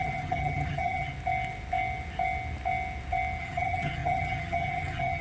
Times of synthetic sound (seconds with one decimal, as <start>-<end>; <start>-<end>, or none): 0.0-1.1; 3.4-5.2